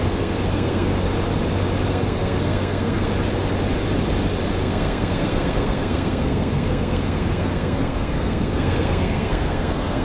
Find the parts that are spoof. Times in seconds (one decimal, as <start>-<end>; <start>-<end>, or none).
0.0-0.9; 1.9-3.1; 4.6-10.0